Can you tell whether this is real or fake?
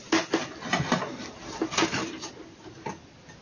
real